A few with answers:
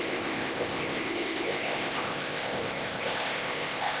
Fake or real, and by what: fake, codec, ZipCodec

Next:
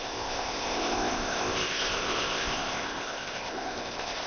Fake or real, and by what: fake, codec, ZipCodec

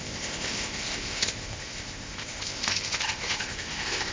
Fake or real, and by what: fake, codec, ZipCodec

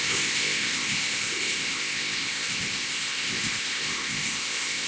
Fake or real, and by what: fake, codec, ZipCodec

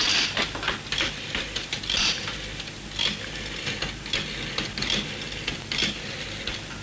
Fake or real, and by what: real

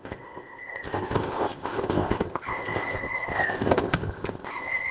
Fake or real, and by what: fake, codec, ZipCodec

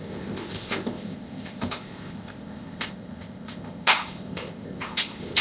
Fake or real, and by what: fake, codec, ZipCodec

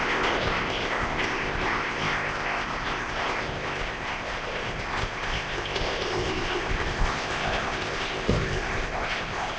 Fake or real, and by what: fake, codec, ZipCodec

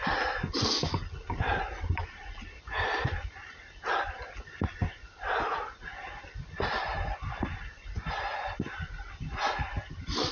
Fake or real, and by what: real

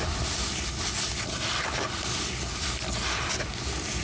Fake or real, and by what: real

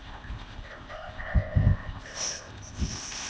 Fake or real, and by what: fake, codec, ZipCodec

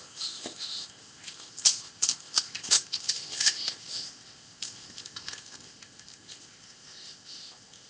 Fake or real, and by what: fake, codec, ZipCodec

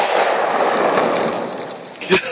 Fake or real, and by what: real